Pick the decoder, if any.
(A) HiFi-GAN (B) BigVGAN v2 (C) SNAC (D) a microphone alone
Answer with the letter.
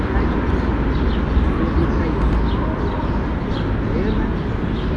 D